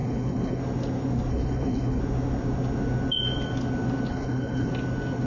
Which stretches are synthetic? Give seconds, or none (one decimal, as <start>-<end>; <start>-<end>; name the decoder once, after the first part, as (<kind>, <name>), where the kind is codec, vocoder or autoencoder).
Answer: 0.0-0.6 (codec, HILCodec); 1.3-2.0; 4.1-4.7